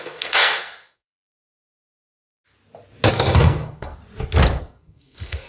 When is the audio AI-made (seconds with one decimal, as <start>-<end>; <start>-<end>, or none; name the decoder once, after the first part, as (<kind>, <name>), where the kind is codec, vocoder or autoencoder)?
0.0-2.4 (codec, SNAC); 3.1-4.0; 4.6-5.5